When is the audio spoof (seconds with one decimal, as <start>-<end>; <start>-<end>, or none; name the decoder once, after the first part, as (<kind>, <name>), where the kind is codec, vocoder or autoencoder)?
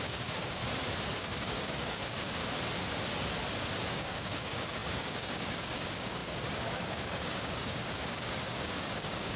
0.0-0.6 (codec, DAC); 1.2-2.4; 3.9-9.4